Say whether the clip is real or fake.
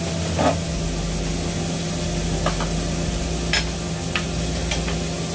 real